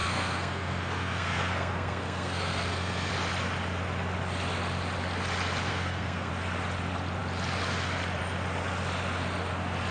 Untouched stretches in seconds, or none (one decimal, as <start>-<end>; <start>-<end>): 3.1-5.7; 6.3-9.9